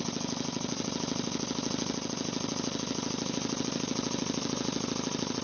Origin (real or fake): real